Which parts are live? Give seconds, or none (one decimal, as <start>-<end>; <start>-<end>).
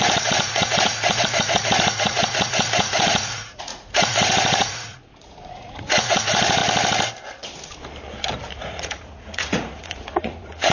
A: 6.6-8.5